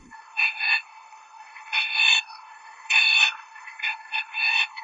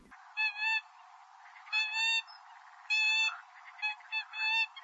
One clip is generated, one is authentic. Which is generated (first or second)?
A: first